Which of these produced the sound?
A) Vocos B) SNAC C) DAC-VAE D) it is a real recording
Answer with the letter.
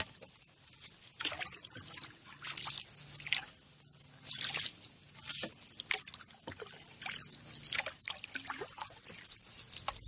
D